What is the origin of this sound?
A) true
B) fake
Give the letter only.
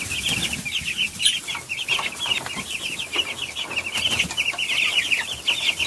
A